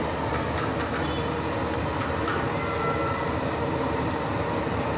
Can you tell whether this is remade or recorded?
recorded